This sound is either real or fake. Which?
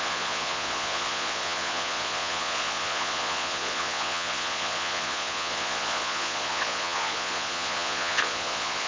fake